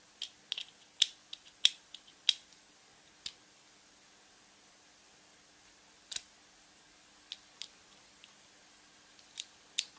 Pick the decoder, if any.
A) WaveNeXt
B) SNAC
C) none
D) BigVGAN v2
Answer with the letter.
C